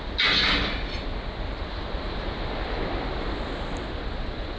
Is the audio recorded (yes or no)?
yes